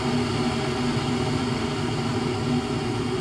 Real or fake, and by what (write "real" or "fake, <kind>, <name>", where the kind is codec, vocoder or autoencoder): real